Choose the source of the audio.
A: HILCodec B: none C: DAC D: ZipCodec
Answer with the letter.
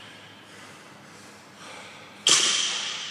B